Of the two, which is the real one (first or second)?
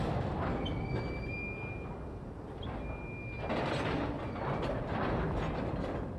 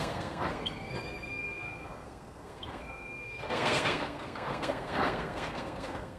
first